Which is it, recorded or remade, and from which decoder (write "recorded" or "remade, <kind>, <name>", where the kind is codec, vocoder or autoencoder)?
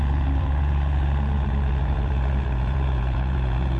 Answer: remade, vocoder, Vocos